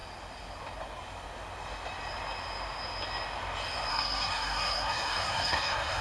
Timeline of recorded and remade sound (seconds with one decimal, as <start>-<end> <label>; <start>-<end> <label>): 0.0-3.9 recorded; 3.9-6.0 remade